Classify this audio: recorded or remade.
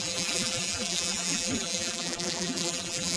remade